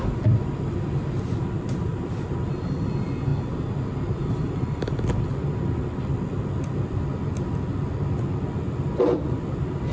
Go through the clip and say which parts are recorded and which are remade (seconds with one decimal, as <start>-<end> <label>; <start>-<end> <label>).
0.0-3.3 remade; 3.3-4.1 recorded; 4.1-5.3 remade; 5.3-8.6 recorded; 8.6-9.9 remade